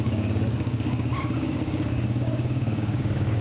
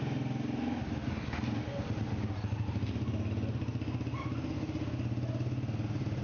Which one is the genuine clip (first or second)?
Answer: second